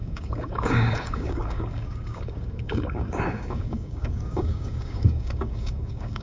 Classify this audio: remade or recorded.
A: remade